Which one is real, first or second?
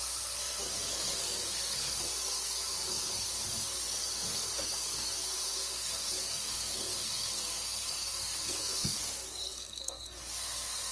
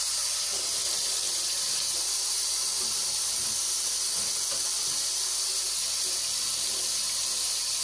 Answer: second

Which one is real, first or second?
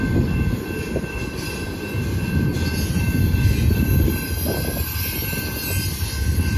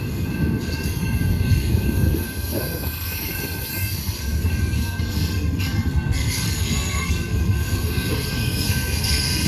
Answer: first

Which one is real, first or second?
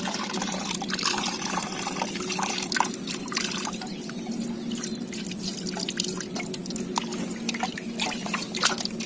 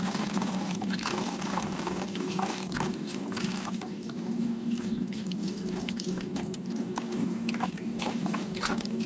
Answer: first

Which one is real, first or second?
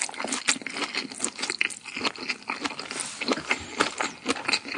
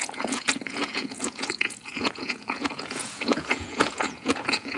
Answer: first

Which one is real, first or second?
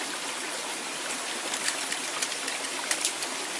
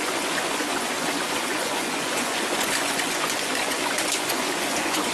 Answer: first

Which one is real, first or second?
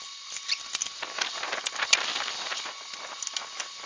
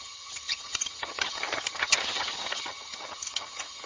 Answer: first